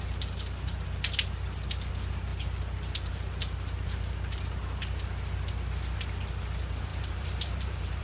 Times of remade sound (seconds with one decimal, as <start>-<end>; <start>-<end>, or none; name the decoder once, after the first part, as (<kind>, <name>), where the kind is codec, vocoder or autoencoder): 6.9-8.0 (vocoder, BigVGAN v2)